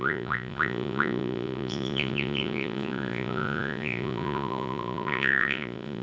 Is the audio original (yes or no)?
no